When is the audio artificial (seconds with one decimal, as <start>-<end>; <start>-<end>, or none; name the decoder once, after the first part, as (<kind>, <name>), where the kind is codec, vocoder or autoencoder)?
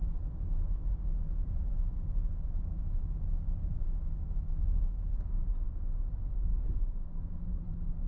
1.4-3.8 (vocoder, BigVGAN v2); 6.5-8.1